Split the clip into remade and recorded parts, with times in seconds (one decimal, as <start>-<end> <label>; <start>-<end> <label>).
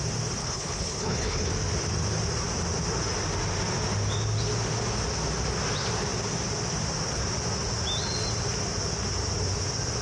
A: 0.0-0.4 recorded; 0.4-1.5 remade; 1.5-10.0 recorded